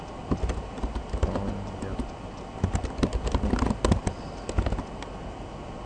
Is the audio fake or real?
real